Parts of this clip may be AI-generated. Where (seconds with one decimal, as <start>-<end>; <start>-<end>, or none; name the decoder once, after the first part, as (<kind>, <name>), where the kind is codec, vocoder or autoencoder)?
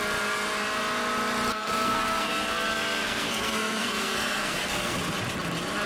1.5-5.0 (codec, SNAC)